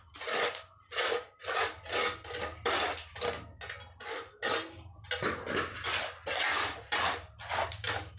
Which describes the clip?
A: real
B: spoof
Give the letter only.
A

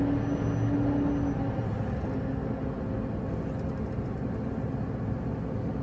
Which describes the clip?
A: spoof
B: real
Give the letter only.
B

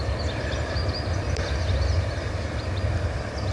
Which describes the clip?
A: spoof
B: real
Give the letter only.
B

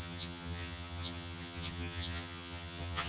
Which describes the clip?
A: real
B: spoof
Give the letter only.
B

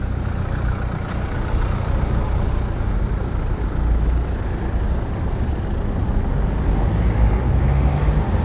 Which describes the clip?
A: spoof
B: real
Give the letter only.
B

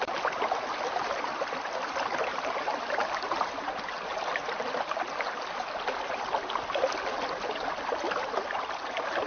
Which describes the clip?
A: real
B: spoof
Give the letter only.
A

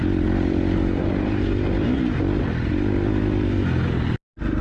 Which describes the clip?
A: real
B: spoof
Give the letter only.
A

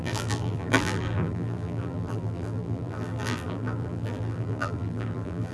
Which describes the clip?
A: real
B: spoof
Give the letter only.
B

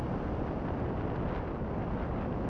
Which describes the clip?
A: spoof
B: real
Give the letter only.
B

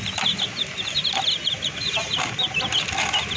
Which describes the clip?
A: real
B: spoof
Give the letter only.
A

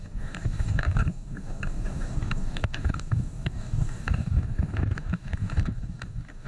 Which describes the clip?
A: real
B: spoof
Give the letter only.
B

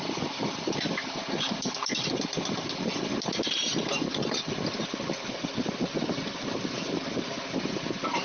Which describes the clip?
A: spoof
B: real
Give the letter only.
B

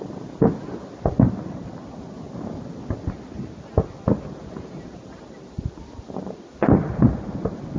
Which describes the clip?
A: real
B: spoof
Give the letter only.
A